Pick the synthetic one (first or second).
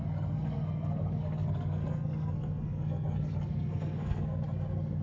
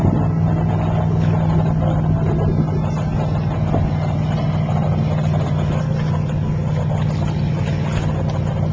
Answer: first